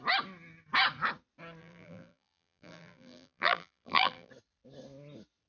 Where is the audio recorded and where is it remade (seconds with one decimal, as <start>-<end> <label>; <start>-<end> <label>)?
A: 0.0-1.6 recorded; 1.6-4.3 remade; 4.3-5.5 recorded